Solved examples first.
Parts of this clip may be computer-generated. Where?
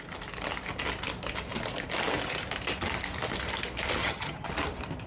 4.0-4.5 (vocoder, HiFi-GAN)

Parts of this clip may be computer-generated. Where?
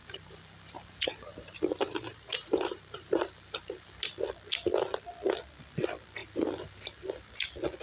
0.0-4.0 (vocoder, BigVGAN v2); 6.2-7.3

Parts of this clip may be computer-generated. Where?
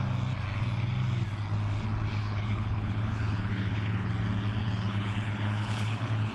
2.2-4.1 (codec, HILCodec); 4.6-6.3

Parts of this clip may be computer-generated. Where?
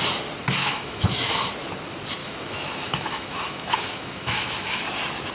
0.6-1.3 (autoencoder, DAC-VAE); 2.2-4.8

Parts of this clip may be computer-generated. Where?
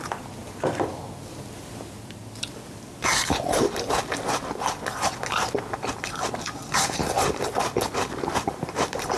0.4-1.0 (vocoder, BigVGAN v2); 8.3-9.2